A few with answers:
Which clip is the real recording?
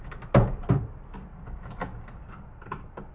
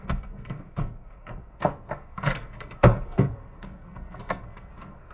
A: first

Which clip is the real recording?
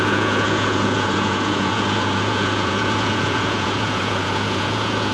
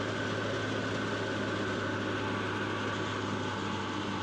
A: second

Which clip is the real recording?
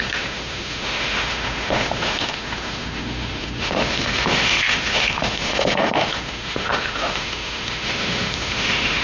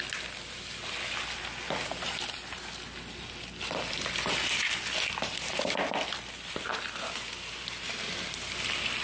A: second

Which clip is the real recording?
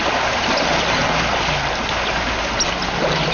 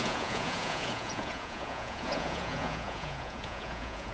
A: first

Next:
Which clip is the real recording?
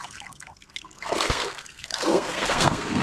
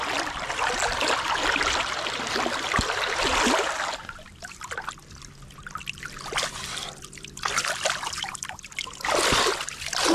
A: second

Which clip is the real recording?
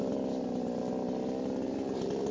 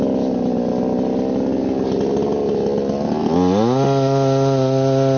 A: second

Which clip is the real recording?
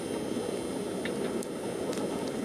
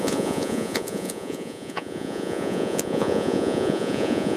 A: first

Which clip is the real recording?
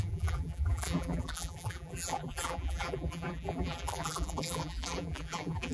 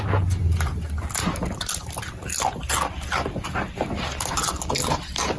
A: second